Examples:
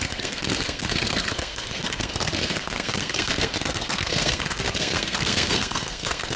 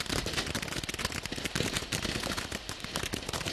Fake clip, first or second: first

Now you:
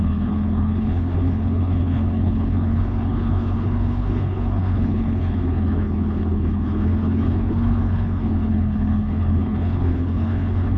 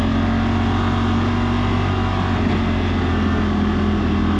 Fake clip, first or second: first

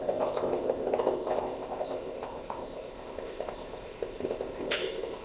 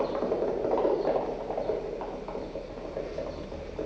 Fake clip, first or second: first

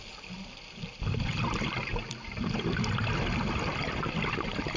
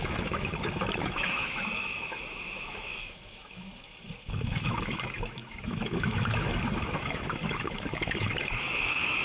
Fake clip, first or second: second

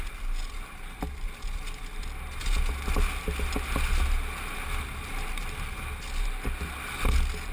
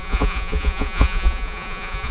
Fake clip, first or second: second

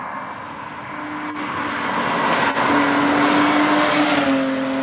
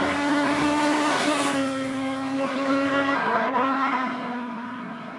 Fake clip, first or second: second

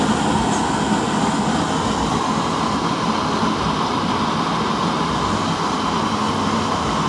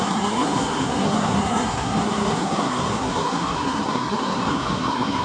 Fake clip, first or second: second